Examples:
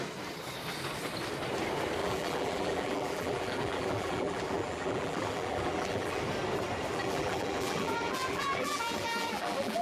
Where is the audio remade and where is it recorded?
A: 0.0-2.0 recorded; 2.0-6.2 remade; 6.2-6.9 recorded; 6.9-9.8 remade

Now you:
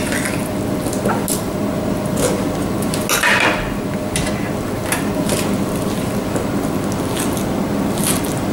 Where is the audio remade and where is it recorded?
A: 0.0-8.5 recorded

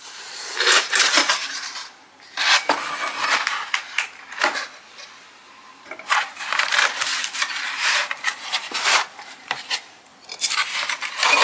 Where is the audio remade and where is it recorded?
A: 0.0-1.8 remade; 1.8-6.7 recorded; 6.7-10.1 remade; 10.1-10.7 recorded; 10.7-11.4 remade